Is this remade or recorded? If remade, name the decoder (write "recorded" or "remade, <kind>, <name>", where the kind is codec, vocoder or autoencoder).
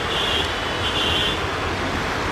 recorded